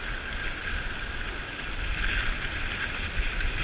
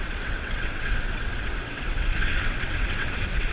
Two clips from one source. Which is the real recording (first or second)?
first